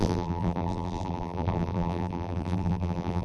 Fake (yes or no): yes